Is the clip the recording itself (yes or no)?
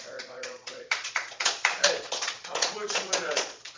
no